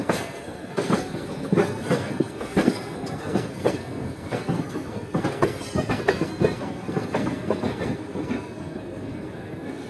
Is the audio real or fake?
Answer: fake